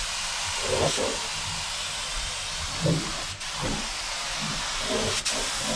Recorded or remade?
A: recorded